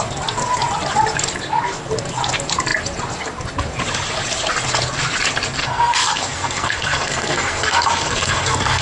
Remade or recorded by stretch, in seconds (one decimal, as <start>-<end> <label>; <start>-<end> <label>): 0.0-5.6 recorded; 5.6-8.8 remade

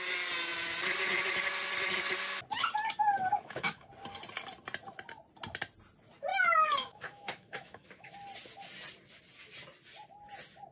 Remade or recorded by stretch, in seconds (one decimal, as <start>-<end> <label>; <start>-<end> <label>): 0.0-3.3 recorded; 3.3-3.9 remade; 3.9-6.3 recorded; 6.3-8.1 remade; 8.1-10.7 recorded

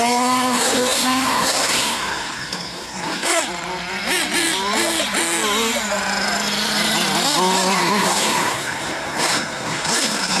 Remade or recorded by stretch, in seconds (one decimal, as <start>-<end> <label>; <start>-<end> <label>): 0.0-3.4 remade; 3.4-7.8 recorded; 7.8-10.4 remade

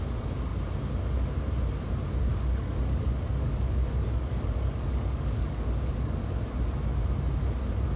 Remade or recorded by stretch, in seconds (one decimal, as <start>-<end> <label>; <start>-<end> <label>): 0.0-2.3 recorded; 2.3-6.4 remade; 6.4-8.0 recorded

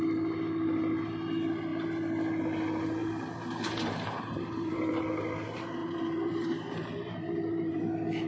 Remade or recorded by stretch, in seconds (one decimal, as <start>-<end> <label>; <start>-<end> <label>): 0.0-3.0 recorded; 3.0-5.0 remade; 5.0-5.8 recorded; 5.8-7.9 remade; 7.9-8.3 recorded